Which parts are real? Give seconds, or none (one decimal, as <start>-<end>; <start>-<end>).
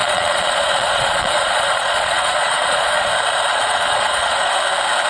3.1-3.5; 4.5-5.1